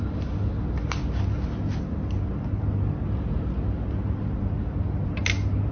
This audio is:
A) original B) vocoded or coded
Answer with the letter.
A